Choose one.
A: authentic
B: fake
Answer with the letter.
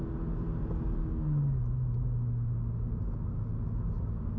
A